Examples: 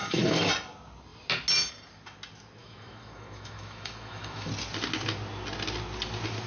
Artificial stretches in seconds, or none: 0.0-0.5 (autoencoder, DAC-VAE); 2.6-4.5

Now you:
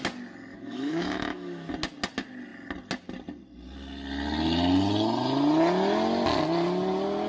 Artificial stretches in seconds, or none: 0.5-1.7 (autoencoder, DAC-VAE)

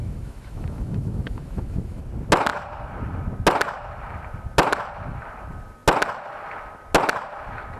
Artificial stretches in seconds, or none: 0.0-2.0 (autoencoder, DAC-VAE)

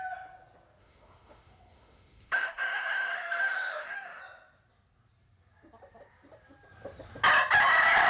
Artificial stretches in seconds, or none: 0.8-4.2 (autoencoder, DAC-VAE)

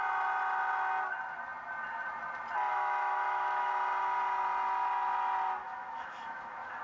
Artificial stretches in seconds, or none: 2.7-3.7 (autoencoder, DAC-VAE); 5.6-6.8

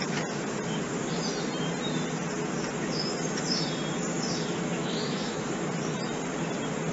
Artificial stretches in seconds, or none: 4.8-5.4 (autoencoder, DAC-VAE)

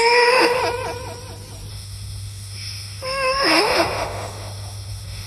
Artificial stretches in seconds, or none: 0.0-0.6 (autoencoder, DAC-VAE); 1.7-5.3